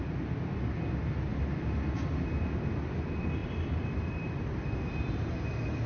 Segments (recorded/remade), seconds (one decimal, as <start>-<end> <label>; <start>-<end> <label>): 0.0-1.3 recorded; 1.3-2.1 remade; 2.1-3.4 recorded; 3.4-5.1 remade; 5.1-5.9 recorded